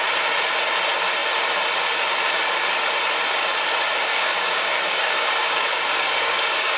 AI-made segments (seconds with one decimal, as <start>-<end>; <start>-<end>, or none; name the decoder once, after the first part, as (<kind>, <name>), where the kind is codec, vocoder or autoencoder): 4.1-6.8 (codec, DAC)